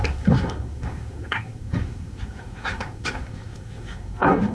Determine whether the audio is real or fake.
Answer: fake